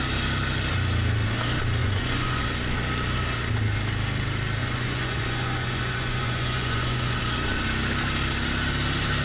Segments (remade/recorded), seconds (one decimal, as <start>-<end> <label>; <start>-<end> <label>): 0.0-1.8 recorded; 1.8-2.4 remade; 2.4-4.6 recorded; 4.6-7.2 remade; 7.2-9.2 recorded